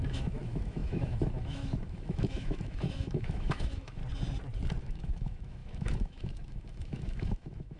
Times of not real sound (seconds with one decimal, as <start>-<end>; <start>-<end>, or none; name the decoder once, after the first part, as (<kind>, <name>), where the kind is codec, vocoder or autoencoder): 0.0-4.0 (autoencoder, DAC-VAE); 4.8-7.8

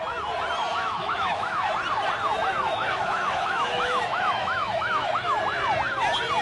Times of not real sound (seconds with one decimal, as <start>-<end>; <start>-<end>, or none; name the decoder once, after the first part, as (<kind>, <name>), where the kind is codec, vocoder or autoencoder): 0.7-1.7 (autoencoder, DAC-VAE); 2.6-5.4

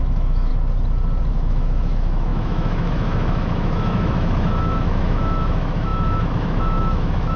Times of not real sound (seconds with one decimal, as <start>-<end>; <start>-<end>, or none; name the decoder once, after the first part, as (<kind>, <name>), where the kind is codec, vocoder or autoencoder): 0.0-0.5 (autoencoder, DAC-VAE); 1.3-7.4

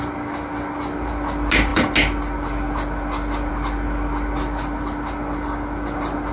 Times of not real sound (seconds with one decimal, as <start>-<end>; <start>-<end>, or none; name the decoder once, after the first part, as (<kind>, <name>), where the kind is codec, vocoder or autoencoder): none

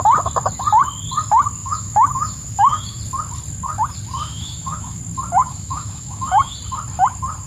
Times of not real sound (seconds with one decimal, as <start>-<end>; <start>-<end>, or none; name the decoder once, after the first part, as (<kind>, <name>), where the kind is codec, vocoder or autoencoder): 1.6-3.0 (autoencoder, DAC-VAE); 4.2-5.0; 5.4-6.6

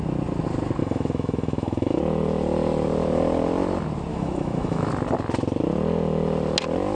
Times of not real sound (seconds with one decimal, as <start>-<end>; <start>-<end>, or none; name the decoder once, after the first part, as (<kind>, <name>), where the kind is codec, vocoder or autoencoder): 0.8-2.0 (autoencoder, DAC-VAE); 4.1-4.9